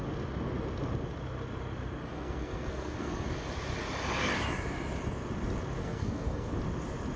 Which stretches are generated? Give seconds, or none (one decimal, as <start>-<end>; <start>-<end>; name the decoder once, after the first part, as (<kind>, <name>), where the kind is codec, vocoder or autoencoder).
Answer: 2.1-3.3 (codec, SNAC); 5.8-6.5